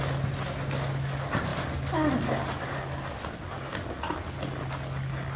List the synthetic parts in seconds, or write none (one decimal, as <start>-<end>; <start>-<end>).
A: none